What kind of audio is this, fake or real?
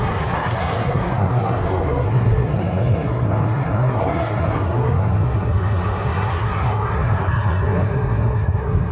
fake